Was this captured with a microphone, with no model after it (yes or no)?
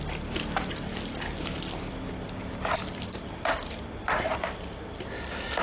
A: yes